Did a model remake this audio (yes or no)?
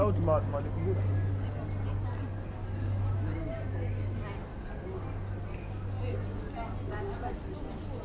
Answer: no